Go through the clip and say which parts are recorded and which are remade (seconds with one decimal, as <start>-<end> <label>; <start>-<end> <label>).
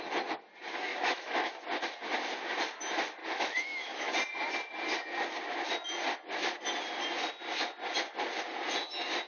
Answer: 0.0-0.9 recorded; 0.9-1.5 remade; 1.5-3.2 recorded; 3.2-4.1 remade; 4.1-9.3 recorded